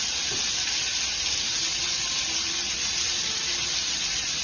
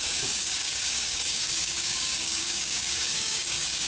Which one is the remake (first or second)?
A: second